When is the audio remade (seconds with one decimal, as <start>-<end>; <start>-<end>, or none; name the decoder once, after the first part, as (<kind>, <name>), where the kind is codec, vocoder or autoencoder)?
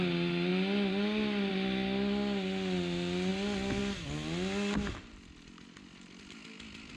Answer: none